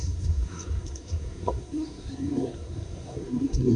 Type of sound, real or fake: fake